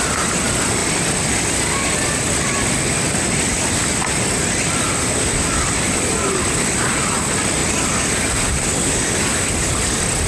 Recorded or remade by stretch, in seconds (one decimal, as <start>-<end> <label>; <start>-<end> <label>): 0.0-10.3 recorded